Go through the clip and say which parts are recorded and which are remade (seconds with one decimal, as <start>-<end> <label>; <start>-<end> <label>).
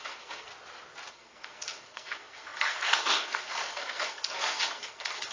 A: 0.0-0.5 remade; 0.5-1.1 recorded; 1.1-5.3 remade